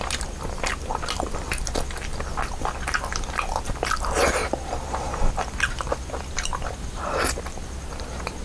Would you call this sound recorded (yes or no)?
yes